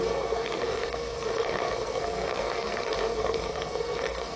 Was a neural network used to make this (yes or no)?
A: yes